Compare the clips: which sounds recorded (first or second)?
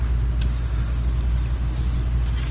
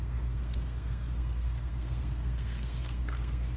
first